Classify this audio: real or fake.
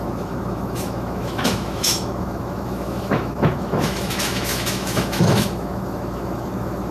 fake